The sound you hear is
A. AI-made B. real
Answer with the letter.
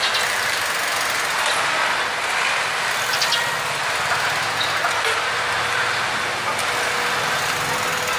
B